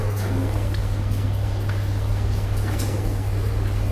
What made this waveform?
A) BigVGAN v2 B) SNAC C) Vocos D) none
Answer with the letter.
B